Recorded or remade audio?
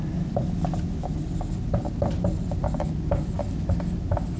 recorded